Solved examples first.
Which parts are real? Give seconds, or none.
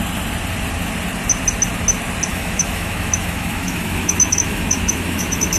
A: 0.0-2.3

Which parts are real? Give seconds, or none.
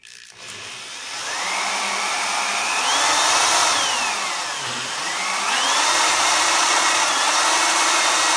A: 0.0-6.6; 7.1-8.4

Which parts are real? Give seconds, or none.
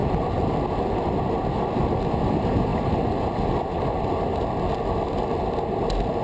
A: 0.0-6.2